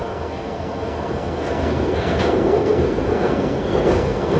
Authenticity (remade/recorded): remade